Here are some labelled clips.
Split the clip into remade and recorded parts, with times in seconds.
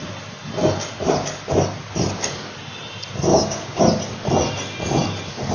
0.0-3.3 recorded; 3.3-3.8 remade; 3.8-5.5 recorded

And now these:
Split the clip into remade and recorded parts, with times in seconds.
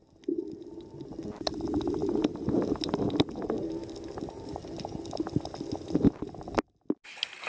0.0-7.5 recorded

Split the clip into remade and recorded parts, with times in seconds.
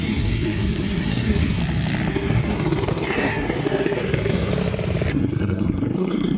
0.0-1.6 remade; 1.6-2.1 recorded; 2.1-4.5 remade; 4.5-5.1 recorded; 5.1-6.4 remade